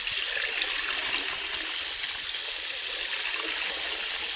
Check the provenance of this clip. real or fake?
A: real